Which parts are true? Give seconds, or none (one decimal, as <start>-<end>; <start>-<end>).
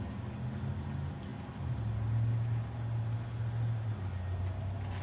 0.0-5.0